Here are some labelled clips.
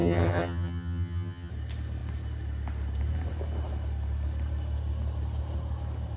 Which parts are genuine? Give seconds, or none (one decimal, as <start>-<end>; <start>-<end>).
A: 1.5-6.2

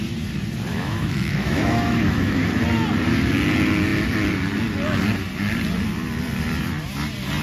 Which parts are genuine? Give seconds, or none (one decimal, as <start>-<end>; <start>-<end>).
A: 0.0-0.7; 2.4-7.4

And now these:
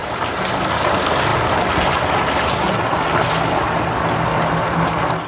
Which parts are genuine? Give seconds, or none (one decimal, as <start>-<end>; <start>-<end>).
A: 0.0-5.3

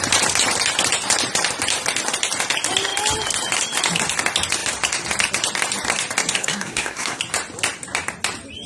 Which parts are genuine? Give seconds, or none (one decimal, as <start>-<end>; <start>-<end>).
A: 0.0-6.4; 7.2-8.7

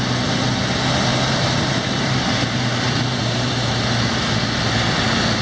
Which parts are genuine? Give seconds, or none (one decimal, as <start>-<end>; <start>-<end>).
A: 0.0-1.1; 4.3-5.4

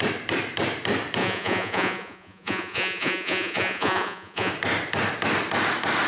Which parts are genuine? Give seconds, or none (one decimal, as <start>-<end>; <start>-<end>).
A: 0.0-1.2; 4.5-6.1

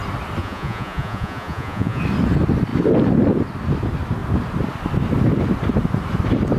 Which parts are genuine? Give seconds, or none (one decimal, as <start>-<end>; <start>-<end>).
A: 0.0-0.4; 2.0-6.6

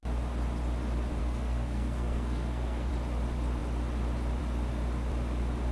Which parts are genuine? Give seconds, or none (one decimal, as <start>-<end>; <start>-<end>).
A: 0.0-1.2; 2.9-5.7